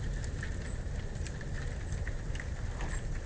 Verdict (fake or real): real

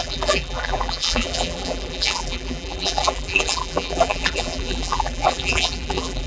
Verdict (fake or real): fake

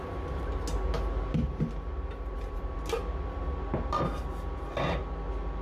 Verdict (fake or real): real